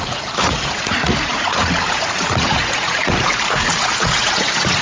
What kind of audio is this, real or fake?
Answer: fake